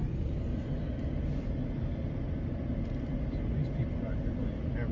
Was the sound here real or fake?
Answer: real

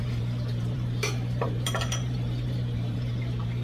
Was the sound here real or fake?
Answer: fake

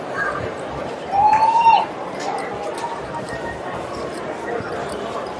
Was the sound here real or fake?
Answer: fake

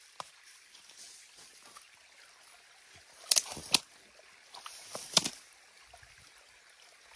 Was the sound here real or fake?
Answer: real